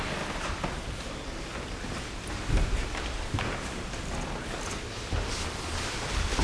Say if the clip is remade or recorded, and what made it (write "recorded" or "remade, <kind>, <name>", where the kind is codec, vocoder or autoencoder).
recorded